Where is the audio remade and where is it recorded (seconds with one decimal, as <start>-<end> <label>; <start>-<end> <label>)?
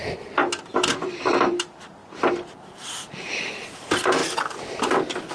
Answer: 0.0-0.6 recorded; 0.6-2.0 remade; 2.0-2.5 recorded; 2.5-4.2 remade; 4.2-5.3 recorded